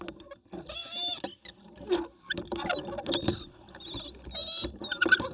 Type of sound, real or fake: real